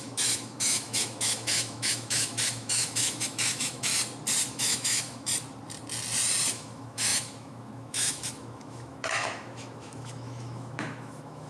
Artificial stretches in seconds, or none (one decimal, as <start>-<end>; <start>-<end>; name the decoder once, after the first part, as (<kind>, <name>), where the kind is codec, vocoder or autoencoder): 0.0-3.9 (autoencoder, DAC-VAE); 4.5-5.3; 6.5-11.5